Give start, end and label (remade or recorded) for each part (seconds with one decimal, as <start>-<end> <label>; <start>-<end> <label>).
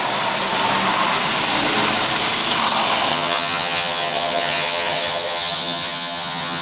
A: 0.0-3.1 recorded; 3.1-6.6 remade